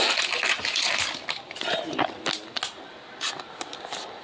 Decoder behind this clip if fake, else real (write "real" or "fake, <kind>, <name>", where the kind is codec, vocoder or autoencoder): real